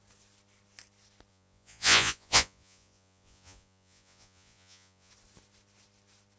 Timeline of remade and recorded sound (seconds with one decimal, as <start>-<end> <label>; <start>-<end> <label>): 0.0-1.3 recorded; 1.3-5.1 remade; 5.1-6.4 recorded